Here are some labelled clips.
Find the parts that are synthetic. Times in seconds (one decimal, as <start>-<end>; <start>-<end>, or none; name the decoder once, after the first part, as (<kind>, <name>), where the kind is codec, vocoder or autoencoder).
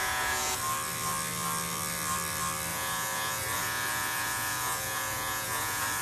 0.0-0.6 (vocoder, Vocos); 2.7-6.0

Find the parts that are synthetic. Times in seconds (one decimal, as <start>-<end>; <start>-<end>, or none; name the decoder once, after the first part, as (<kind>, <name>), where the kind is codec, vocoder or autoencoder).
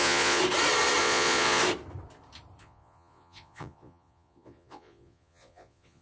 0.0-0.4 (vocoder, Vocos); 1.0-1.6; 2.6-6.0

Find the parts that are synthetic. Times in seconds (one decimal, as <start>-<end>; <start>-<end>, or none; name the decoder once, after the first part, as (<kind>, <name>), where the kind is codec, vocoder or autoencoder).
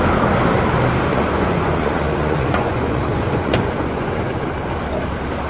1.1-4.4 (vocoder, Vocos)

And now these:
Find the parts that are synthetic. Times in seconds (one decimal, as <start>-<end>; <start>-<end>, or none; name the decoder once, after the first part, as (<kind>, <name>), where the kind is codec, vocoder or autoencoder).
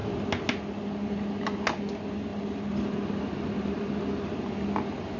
none